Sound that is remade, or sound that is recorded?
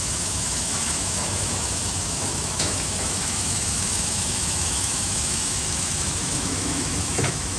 remade